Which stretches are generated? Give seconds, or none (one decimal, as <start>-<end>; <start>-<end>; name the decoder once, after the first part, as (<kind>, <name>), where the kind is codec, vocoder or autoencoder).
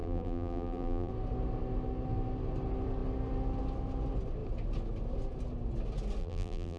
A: 0.0-1.1 (vocoder, BigVGAN v2); 6.2-6.8